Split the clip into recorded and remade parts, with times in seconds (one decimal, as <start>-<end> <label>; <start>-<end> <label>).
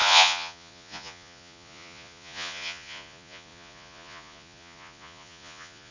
0.0-5.9 remade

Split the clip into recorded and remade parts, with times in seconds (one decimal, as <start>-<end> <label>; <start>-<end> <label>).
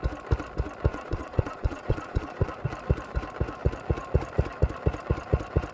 0.0-0.9 recorded; 0.9-2.5 remade; 2.5-5.7 recorded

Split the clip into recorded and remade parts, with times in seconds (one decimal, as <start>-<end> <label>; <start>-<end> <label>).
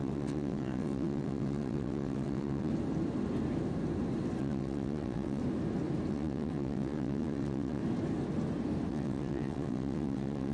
0.0-2.7 remade; 2.7-4.4 recorded; 4.4-5.4 remade; 5.4-6.1 recorded; 6.1-7.8 remade; 7.8-8.9 recorded; 8.9-10.5 remade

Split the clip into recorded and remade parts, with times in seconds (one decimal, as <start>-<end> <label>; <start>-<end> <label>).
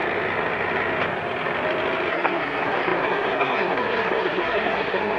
0.0-2.1 recorded; 2.1-5.2 remade